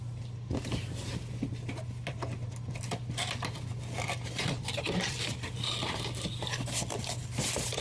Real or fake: fake